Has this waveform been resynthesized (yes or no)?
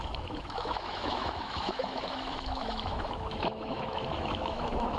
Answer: yes